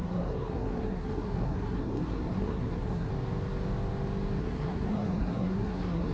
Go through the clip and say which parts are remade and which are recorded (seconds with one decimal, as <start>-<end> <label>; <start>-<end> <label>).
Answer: 0.0-3.1 remade; 3.1-4.4 recorded; 4.4-6.1 remade